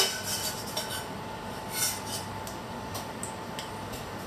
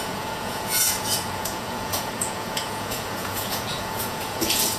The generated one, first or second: second